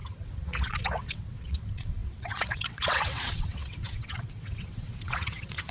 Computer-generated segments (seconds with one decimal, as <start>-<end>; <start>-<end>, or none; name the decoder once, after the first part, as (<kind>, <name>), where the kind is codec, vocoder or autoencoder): 0.0-5.7 (vocoder, WaveNeXt)